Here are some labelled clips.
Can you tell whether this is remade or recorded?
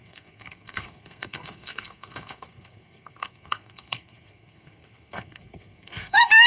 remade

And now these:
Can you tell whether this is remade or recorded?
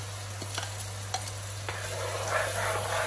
recorded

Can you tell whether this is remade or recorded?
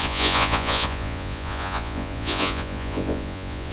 remade